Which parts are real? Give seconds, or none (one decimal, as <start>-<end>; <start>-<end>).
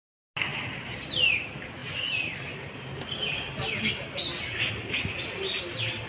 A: 0.0-6.1